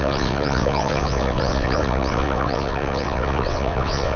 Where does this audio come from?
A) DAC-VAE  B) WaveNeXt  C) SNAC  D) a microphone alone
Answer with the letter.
B